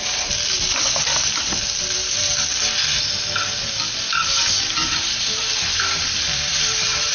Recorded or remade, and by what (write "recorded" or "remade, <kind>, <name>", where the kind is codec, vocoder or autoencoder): remade, vocoder, BigVGAN v2